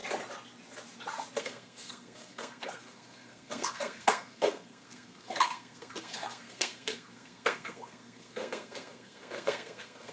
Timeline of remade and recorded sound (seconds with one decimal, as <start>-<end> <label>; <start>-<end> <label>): 0.0-1.4 recorded; 1.4-10.1 remade